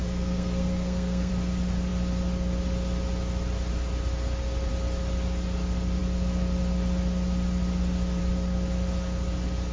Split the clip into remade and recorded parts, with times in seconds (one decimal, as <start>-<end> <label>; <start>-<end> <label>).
0.0-1.3 remade; 1.3-9.7 recorded